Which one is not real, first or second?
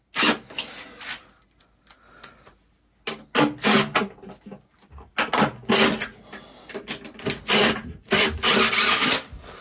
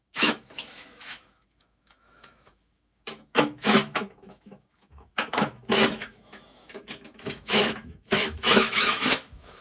second